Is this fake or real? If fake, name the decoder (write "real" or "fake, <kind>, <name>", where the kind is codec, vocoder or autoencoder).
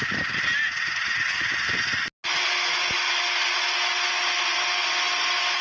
real